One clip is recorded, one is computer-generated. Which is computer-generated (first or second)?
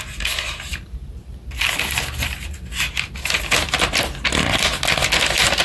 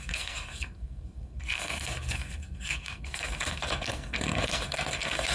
second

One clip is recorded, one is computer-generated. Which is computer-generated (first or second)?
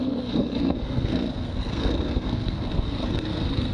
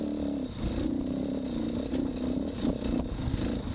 first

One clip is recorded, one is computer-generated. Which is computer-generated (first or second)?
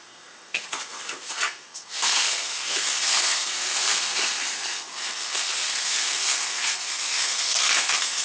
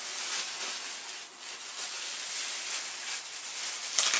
first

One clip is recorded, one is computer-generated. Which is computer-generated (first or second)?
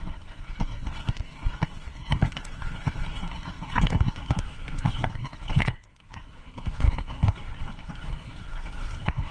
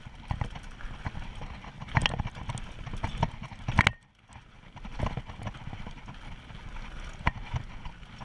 first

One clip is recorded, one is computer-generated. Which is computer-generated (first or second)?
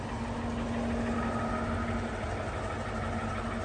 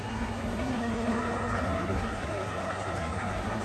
second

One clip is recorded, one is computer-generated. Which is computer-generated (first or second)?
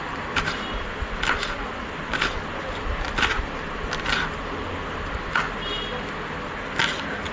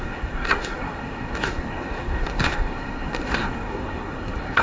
second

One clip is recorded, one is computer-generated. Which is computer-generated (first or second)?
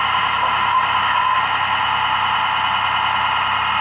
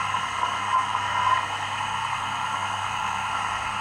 second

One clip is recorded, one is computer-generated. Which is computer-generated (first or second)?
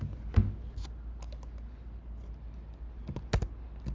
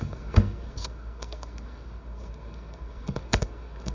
second